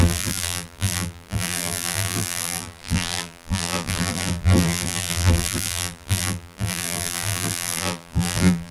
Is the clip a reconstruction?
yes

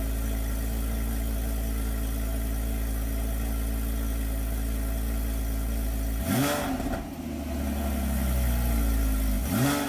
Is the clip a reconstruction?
no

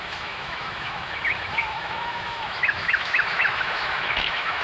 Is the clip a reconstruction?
yes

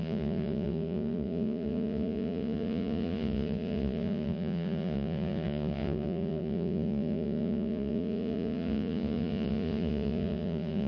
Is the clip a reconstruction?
yes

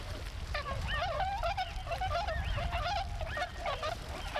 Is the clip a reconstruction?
no